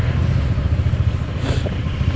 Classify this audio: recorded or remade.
recorded